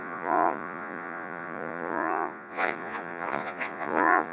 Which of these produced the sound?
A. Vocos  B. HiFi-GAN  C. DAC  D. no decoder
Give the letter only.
A